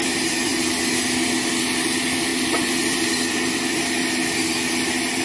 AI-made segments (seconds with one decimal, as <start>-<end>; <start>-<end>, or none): none